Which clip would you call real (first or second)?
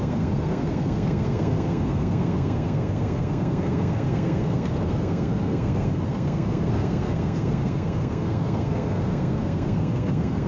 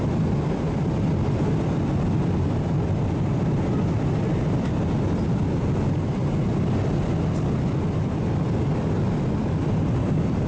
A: second